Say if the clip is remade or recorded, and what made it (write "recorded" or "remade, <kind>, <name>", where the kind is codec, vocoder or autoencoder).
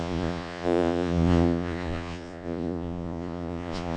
remade, vocoder, Vocos